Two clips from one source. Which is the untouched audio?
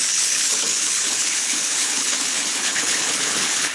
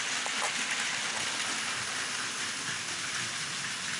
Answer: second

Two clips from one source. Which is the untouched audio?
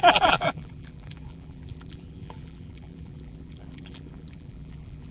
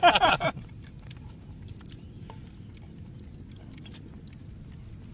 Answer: second